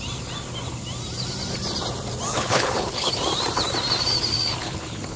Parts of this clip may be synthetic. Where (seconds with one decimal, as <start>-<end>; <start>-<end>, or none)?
2.3-3.1; 4.6-5.2